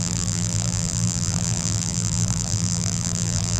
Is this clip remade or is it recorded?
remade